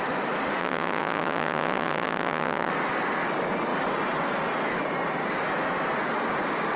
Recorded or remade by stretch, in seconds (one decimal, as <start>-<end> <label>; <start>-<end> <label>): 0.0-0.6 recorded; 0.6-2.7 remade; 2.7-6.8 recorded